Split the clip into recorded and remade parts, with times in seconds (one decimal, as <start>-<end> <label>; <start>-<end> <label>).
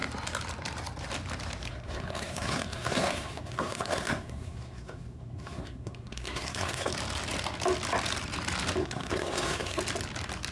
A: 0.0-1.7 recorded; 1.7-6.9 remade; 6.9-8.8 recorded; 8.8-9.8 remade; 9.8-10.5 recorded